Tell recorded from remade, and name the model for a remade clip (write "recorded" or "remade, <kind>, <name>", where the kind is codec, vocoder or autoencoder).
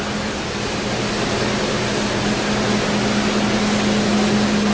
recorded